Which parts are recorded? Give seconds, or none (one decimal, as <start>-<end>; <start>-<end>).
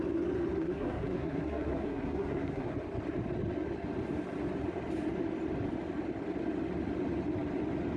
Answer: 0.0-0.6; 2.7-8.0